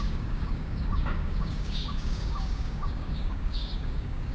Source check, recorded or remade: remade